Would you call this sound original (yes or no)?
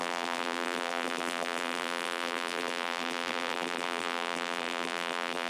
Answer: no